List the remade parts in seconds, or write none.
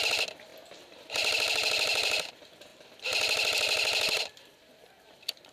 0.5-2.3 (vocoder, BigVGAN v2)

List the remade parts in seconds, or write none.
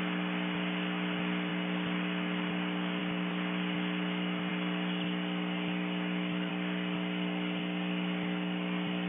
none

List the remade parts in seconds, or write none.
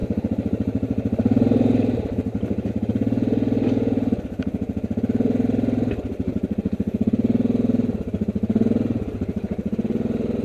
0.0-2.7 (vocoder, BigVGAN v2)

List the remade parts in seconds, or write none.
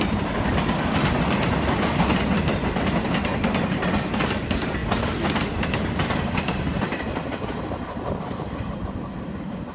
0.0-3.3 (vocoder, BigVGAN v2); 4.2-4.8; 5.9-9.7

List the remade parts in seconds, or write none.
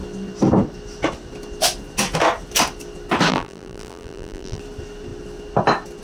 3.3-4.6 (vocoder, BigVGAN v2)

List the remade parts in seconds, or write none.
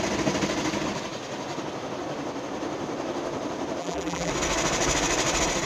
3.8-4.3 (vocoder, BigVGAN v2)